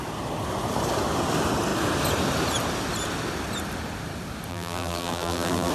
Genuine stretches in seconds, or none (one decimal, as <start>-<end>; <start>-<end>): 0.0-4.5